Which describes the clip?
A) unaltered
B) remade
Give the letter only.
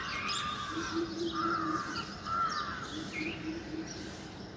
B